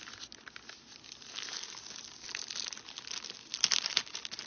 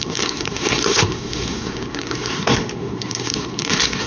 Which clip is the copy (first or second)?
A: second